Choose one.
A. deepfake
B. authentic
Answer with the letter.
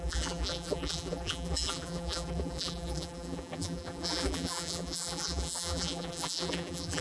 A